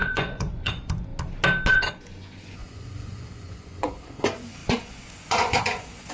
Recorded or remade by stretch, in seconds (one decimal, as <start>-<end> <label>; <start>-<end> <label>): 0.0-1.1 remade; 1.1-1.7 recorded; 1.7-6.1 remade